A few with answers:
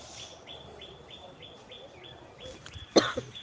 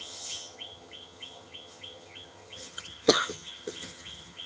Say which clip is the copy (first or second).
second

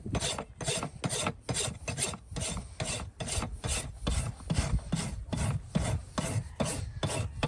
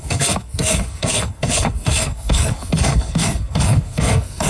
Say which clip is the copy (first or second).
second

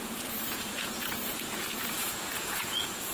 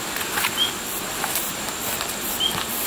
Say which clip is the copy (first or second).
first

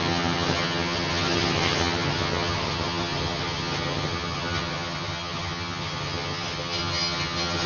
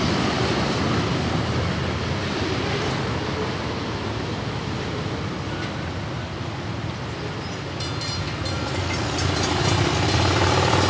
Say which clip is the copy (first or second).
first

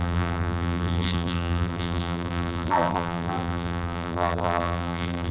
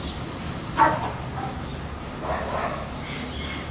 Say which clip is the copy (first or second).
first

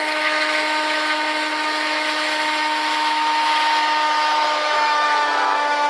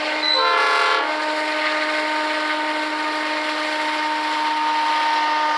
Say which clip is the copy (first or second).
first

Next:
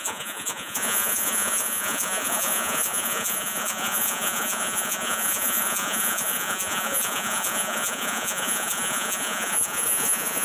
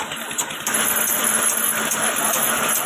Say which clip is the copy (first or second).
first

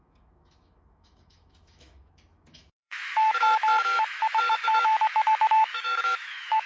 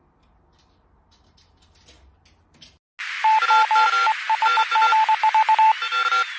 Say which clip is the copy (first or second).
first